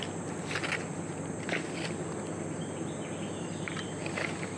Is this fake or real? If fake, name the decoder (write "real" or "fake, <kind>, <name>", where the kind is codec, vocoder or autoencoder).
real